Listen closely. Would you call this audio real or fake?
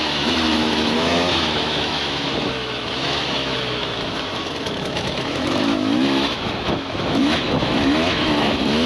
fake